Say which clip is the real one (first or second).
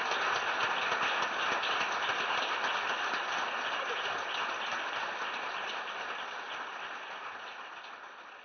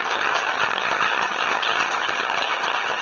first